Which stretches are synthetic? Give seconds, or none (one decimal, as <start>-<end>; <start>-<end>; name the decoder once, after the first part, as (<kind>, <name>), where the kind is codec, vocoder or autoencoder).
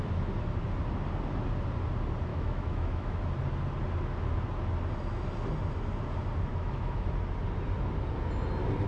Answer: 2.3-3.3 (autoencoder, DAC-VAE); 6.5-7.1